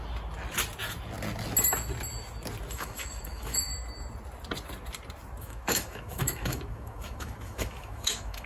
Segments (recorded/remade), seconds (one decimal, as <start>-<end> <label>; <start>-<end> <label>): 0.0-2.7 recorded; 2.7-3.7 remade; 3.7-5.4 recorded; 5.4-8.5 remade

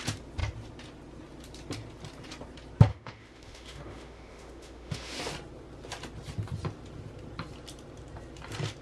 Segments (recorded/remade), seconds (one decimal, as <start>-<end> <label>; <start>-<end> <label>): 0.0-2.9 recorded; 2.9-5.2 remade; 5.2-8.8 recorded

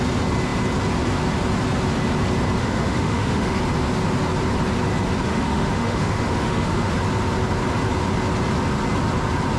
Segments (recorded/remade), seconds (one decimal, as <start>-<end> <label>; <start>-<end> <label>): 0.0-2.6 recorded; 2.6-3.6 remade; 3.6-5.3 recorded; 5.3-6.9 remade; 6.9-9.6 recorded

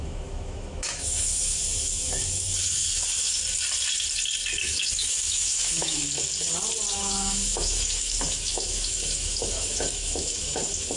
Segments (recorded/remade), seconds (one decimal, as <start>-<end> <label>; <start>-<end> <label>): 0.0-3.4 remade; 3.4-4.6 recorded; 4.6-6.0 remade; 6.0-6.9 recorded; 6.9-11.0 remade